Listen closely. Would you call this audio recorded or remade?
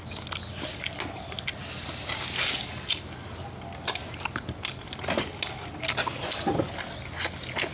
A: recorded